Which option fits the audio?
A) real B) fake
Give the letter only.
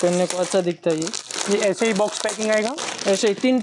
A